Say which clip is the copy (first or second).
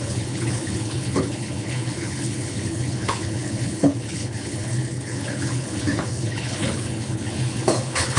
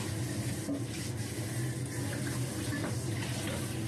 first